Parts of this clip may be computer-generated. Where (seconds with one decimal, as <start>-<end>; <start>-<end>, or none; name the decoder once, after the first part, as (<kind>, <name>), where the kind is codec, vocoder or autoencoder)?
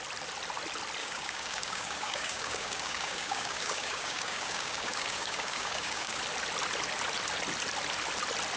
1.0-6.2 (codec, DAC)